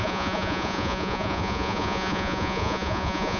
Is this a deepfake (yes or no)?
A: yes